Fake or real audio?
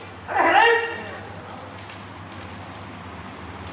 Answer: real